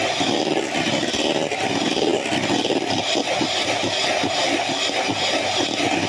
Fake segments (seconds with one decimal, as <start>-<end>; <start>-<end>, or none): none

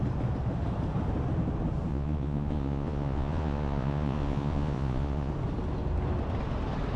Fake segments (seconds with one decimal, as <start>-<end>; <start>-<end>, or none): 1.9-5.3